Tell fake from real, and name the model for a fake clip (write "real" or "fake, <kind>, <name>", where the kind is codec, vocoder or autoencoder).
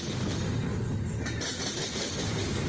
real